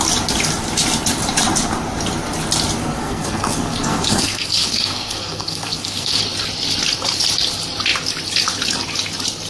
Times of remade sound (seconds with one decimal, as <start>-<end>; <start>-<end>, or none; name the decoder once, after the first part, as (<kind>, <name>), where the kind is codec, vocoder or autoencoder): 2.8-6.2 (codec, SNAC)

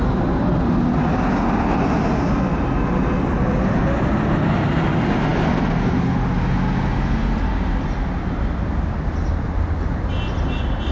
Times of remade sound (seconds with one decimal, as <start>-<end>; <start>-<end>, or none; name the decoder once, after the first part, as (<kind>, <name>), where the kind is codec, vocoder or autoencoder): none

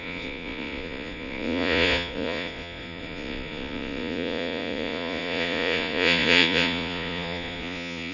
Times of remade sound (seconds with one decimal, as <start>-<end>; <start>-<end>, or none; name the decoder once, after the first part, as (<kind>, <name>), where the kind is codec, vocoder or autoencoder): 0.0-8.1 (vocoder, Vocos)

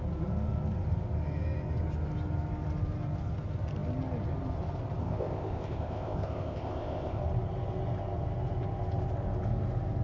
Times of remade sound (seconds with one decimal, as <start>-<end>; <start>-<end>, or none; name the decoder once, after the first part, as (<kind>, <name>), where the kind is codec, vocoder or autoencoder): 5.0-7.2 (codec, ZipCodec)

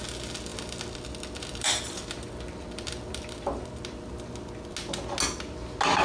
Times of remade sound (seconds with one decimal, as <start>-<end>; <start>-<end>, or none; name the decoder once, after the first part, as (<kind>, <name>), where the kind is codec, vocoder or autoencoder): 0.5-4.1 (vocoder, BigVGAN v2)